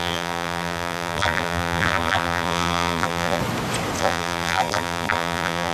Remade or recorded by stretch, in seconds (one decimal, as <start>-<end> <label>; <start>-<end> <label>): 0.0-3.4 remade; 3.4-4.0 recorded; 4.0-5.7 remade